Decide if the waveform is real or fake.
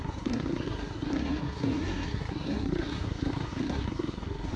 fake